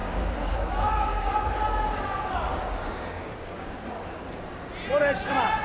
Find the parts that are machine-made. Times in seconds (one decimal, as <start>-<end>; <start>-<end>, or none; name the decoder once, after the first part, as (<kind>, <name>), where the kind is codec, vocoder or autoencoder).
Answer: 0.0-1.3 (codec, DAC); 2.5-3.8

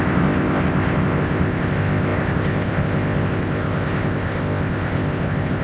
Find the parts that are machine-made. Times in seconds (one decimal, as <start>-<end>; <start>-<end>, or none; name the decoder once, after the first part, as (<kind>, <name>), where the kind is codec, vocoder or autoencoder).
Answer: 0.0-5.6 (codec, ZipCodec)